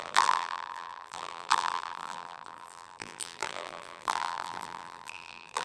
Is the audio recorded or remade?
remade